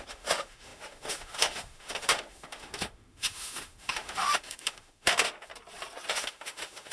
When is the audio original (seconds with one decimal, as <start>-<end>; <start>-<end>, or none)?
5.5-6.1